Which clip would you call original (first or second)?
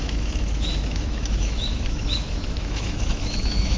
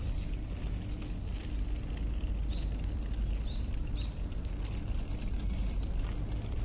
second